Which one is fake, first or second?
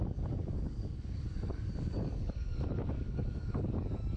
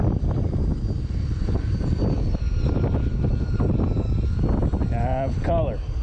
first